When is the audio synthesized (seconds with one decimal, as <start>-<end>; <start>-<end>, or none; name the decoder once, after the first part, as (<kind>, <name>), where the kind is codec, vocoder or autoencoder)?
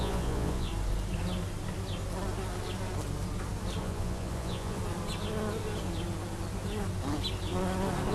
0.0-0.7 (vocoder, Vocos); 3.8-4.8